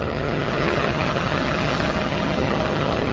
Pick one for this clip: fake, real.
fake